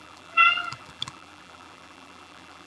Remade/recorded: remade